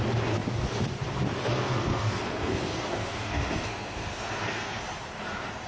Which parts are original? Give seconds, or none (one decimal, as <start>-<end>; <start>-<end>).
0.0-1.4; 4.8-5.7

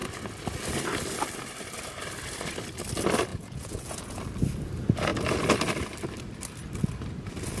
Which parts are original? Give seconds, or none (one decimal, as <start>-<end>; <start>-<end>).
0.0-3.3; 4.2-7.6

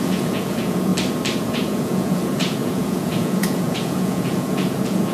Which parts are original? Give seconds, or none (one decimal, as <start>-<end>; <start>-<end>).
0.9-1.4

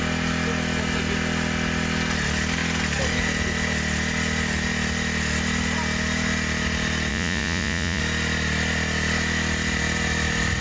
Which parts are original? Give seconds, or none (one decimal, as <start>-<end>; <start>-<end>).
0.0-7.1; 8.0-10.6

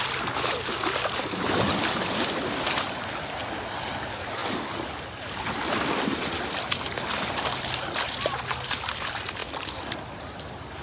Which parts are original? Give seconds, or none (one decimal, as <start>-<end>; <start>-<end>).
0.0-10.8